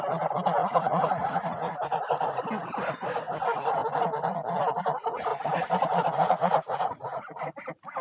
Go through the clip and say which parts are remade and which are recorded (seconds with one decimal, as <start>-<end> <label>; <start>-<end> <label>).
0.0-0.6 recorded; 0.6-1.7 remade; 1.7-5.3 recorded; 5.3-7.4 remade; 7.4-8.0 recorded